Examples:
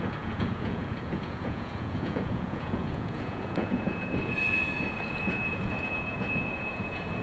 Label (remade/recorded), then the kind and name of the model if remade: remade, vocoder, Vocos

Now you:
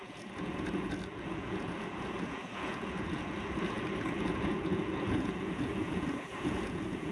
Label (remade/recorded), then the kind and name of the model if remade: remade, vocoder, Vocos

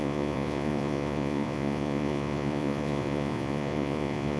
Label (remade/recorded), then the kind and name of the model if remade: remade, vocoder, Vocos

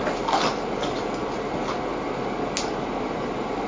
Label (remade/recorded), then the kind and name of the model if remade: recorded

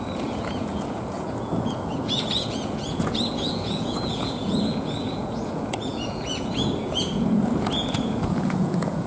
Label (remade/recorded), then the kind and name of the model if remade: remade, vocoder, Vocos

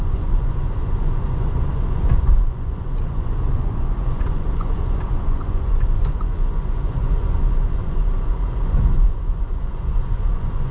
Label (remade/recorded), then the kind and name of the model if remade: remade, vocoder, Vocos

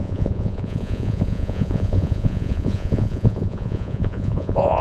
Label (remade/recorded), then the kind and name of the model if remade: remade, vocoder, Vocos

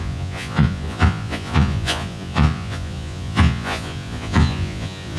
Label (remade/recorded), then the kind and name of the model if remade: remade, vocoder, Vocos